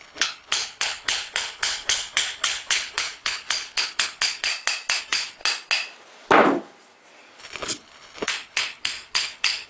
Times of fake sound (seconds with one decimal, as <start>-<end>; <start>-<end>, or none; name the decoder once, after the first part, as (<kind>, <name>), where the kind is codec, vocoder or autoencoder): 0.0-4.5 (codec, HILCodec); 5.0-5.4; 7.4-9.7